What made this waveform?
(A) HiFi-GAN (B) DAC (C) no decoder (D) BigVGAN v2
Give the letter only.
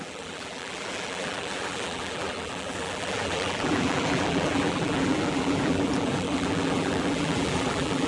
D